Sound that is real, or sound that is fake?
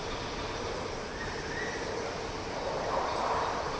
real